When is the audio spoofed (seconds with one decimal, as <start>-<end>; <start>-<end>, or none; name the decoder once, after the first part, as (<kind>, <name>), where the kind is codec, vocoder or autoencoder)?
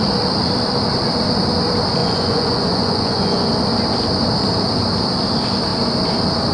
2.0-3.5 (vocoder, Vocos)